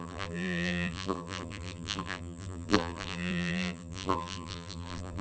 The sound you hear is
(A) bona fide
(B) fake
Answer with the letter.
B